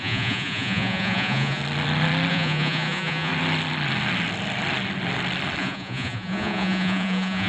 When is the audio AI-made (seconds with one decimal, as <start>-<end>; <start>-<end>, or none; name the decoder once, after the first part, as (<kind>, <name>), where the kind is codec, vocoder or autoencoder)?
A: 0.0-1.6 (vocoder, Vocos); 2.3-3.3; 5.6-7.5